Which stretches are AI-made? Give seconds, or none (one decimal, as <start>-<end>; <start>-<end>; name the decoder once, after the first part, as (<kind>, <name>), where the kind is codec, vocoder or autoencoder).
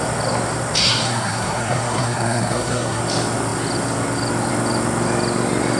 0.8-3.0 (codec, SNAC)